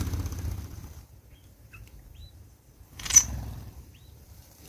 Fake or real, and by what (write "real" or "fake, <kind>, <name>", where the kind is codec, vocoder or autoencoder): fake, vocoder, BigVGAN v2